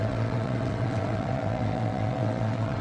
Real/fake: fake